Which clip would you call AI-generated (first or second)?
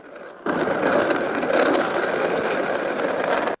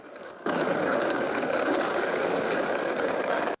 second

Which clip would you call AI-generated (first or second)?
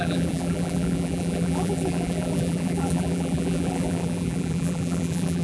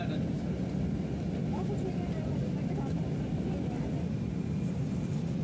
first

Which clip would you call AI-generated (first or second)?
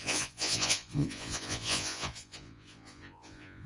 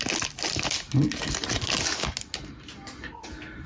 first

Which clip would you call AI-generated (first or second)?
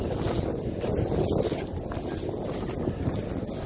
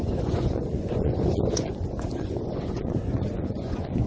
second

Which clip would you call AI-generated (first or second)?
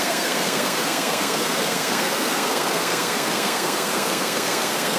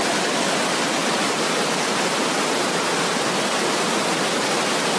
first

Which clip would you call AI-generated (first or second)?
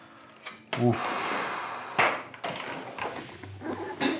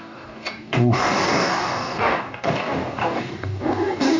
second